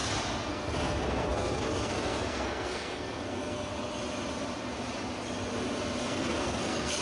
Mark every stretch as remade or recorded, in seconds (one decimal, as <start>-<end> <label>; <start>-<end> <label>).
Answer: 0.0-0.5 recorded; 0.5-3.7 remade; 3.7-6.0 recorded; 6.0-7.0 remade

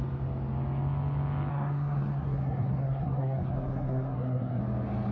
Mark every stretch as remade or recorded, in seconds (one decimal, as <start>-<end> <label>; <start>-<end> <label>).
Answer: 0.0-1.5 recorded; 1.5-4.6 remade; 4.6-5.1 recorded